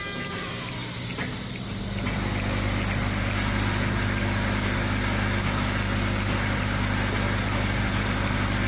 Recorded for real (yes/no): yes